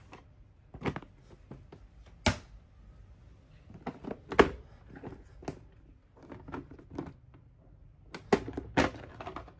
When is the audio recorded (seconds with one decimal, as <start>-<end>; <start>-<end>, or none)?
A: 0.0-9.6